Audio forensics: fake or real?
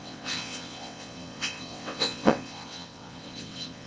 fake